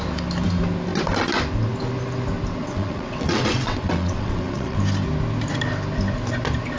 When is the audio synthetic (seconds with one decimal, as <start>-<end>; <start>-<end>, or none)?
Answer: 2.6-4.8

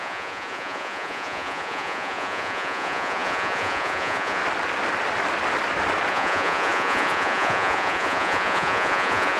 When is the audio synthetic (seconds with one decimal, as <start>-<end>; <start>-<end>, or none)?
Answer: 0.0-4.4; 6.1-9.4

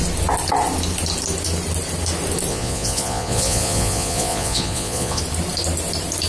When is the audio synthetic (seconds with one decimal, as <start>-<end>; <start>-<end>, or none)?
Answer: 2.5-5.2